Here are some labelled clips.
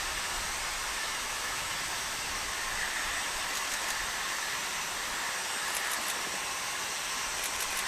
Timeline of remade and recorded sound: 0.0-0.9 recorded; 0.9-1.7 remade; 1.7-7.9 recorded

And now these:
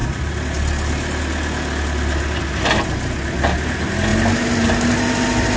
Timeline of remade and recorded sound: 0.0-5.6 recorded

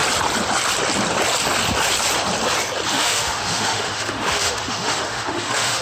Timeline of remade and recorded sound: 0.0-2.9 recorded; 2.9-5.8 remade

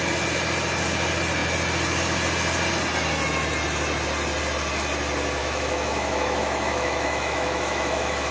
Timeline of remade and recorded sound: 0.0-5.4 recorded; 5.4-8.3 remade

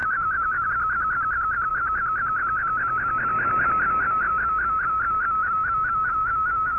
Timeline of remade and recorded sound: 0.0-0.7 remade; 0.7-5.4 recorded; 5.4-6.8 remade

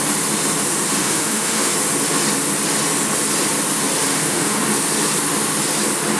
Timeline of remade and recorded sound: 0.0-1.0 recorded; 1.0-1.7 remade; 1.7-4.1 recorded; 4.1-4.6 remade; 4.6-6.2 recorded

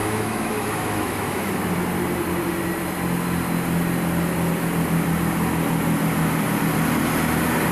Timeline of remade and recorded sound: 0.0-1.5 remade; 1.5-7.7 recorded

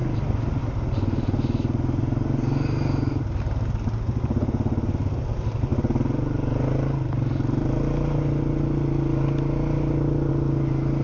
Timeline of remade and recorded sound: 0.0-11.0 recorded